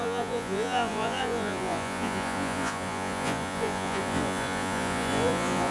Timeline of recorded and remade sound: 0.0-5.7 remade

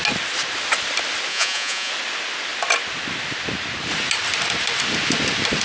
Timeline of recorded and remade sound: 0.0-1.3 recorded; 1.3-1.9 remade; 1.9-5.6 recorded

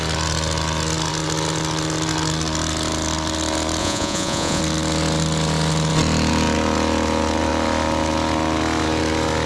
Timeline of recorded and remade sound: 0.0-3.8 recorded; 3.8-4.6 remade; 4.6-9.5 recorded

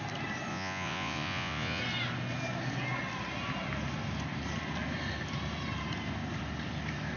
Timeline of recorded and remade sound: 0.0-0.5 recorded; 0.5-1.8 remade; 1.8-7.2 recorded

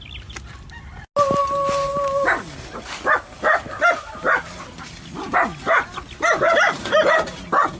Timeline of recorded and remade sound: 0.0-7.8 recorded

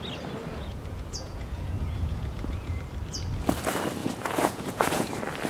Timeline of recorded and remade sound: 0.0-0.5 recorded; 0.5-2.8 remade; 2.8-4.0 recorded; 4.0-5.1 remade; 5.1-5.5 recorded